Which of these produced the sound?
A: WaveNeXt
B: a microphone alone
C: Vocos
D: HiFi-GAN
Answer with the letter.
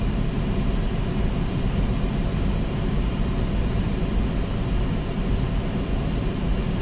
B